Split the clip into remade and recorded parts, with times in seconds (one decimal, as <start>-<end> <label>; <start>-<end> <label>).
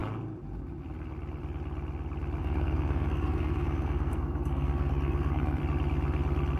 0.0-2.4 recorded; 2.4-5.6 remade; 5.6-6.6 recorded